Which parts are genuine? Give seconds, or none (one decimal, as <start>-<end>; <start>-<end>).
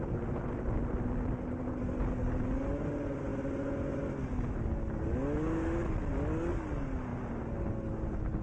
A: 0.0-8.4